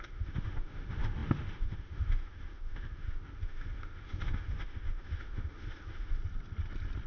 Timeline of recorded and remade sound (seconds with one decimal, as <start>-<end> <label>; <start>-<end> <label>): 0.0-6.2 remade; 6.2-7.1 recorded